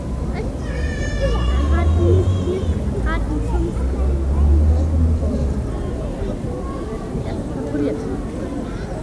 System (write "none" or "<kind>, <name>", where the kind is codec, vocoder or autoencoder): none